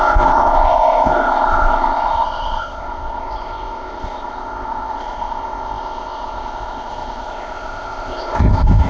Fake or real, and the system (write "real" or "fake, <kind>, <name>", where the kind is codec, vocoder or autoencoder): fake, codec, ZipCodec